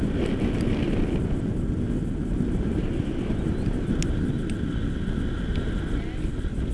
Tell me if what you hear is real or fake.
real